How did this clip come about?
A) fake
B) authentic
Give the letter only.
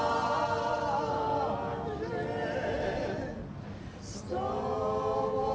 B